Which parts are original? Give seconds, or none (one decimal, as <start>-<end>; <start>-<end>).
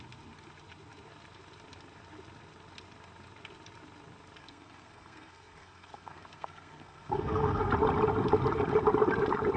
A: 0.0-4.4; 7.7-9.6